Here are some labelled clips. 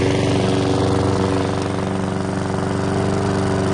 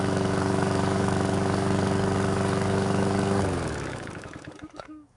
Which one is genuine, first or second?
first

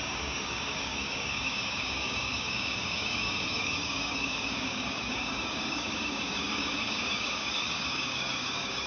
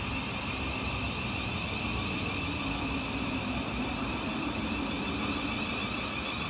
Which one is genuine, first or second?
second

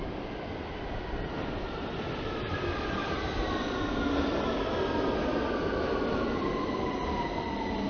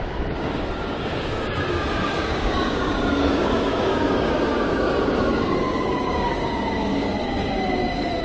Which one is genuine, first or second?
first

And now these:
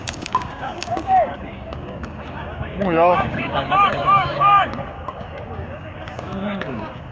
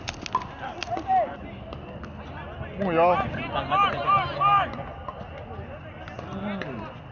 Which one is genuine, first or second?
second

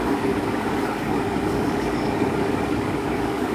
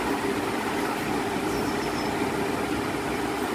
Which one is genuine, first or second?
second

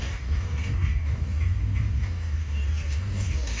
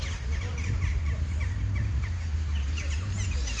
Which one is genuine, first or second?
second